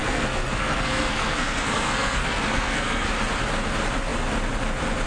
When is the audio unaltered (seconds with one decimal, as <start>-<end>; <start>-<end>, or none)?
3.1-5.1